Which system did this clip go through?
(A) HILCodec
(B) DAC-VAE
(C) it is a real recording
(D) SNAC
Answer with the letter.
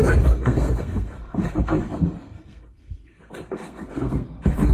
D